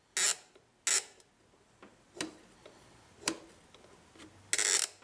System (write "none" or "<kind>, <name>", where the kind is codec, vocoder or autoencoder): none